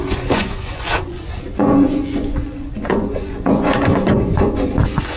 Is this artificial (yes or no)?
yes